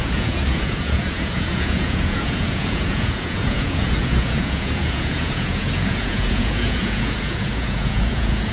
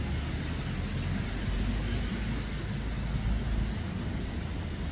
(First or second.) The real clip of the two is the second